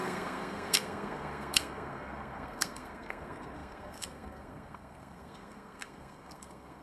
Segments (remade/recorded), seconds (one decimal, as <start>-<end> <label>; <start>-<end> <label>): 0.0-6.8 remade